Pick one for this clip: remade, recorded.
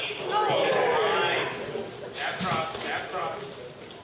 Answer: recorded